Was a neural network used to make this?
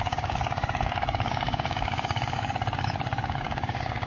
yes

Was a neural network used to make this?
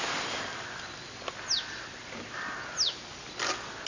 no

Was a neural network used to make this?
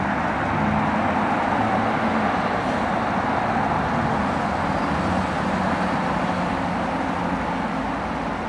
no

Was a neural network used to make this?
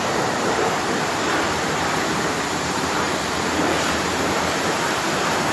yes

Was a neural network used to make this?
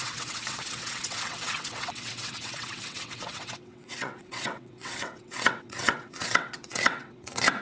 yes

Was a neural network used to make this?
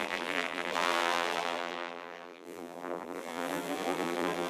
yes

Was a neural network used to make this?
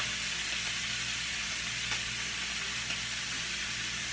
no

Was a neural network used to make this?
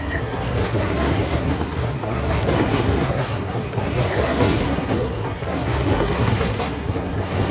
yes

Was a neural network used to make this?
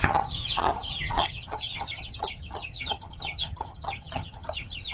yes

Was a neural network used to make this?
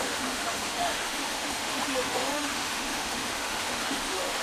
yes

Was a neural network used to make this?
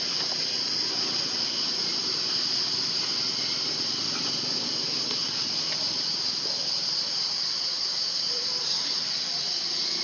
no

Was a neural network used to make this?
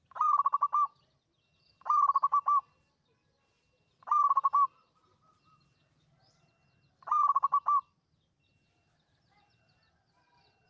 no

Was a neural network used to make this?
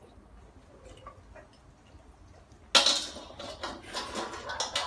no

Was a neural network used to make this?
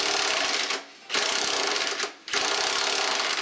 no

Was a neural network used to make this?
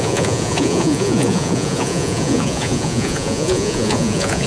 yes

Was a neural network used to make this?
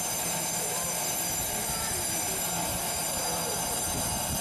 no